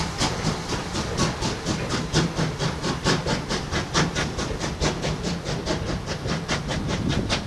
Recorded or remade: recorded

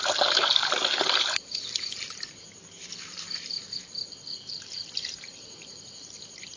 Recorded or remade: remade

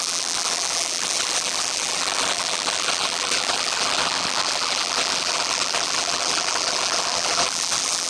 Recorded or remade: remade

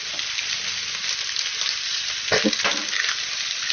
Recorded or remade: remade